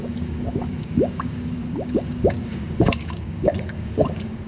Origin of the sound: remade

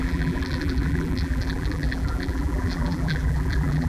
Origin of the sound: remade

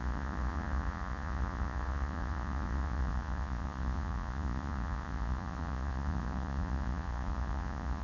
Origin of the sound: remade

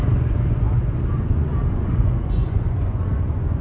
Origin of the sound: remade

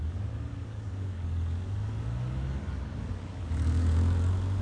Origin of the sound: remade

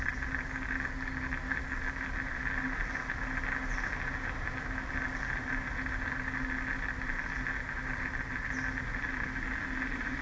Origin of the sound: recorded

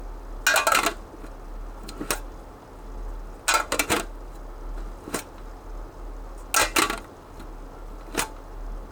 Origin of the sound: recorded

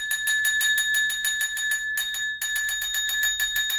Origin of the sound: recorded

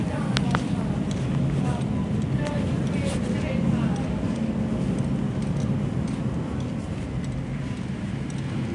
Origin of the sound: recorded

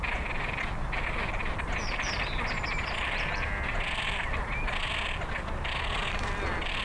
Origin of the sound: recorded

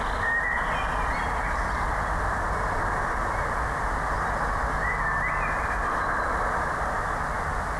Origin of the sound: recorded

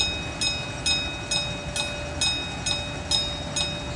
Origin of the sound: recorded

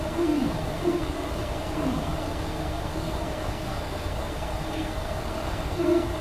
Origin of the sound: remade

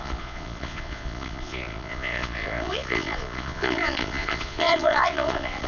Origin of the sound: remade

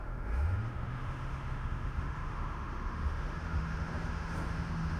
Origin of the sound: remade